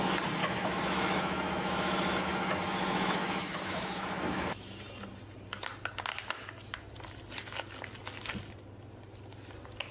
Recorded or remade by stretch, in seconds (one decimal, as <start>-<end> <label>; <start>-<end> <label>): 0.0-0.4 recorded; 0.4-4.8 remade; 4.8-9.9 recorded